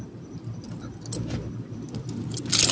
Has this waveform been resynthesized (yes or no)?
no